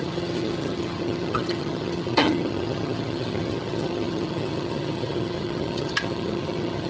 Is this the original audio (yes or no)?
no